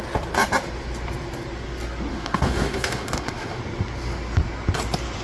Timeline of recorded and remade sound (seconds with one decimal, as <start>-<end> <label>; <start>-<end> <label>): 0.0-2.1 recorded; 2.1-3.6 remade; 3.6-5.2 recorded